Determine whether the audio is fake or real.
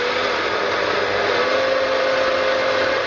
real